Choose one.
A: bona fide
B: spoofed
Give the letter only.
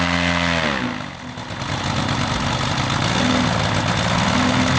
A